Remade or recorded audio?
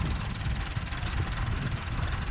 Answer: remade